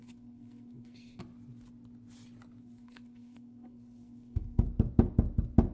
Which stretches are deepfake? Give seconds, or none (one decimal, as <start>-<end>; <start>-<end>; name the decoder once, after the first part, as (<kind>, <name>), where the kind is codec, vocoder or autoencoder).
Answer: 0.0-1.2 (codec, SNAC); 2.6-4.7